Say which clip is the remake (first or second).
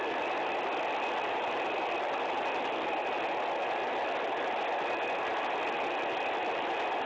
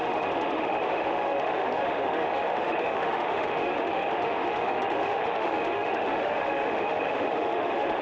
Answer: second